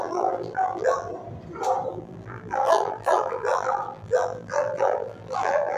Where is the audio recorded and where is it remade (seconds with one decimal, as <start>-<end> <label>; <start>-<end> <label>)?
0.0-1.1 remade; 1.1-1.9 recorded; 1.9-5.8 remade